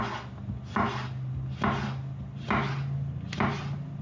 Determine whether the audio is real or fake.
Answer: real